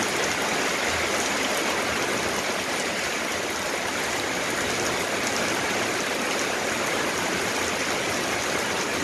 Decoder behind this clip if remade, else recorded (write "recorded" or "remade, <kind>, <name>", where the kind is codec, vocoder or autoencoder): recorded